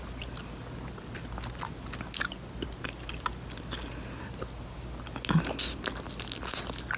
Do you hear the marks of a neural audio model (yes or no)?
no